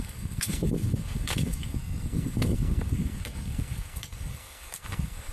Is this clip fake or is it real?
fake